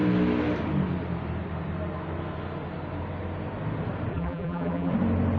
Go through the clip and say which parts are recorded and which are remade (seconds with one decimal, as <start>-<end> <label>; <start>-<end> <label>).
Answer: 0.0-4.1 recorded; 4.1-4.9 remade; 4.9-5.4 recorded